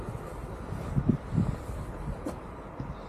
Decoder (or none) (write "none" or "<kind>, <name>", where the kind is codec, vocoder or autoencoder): none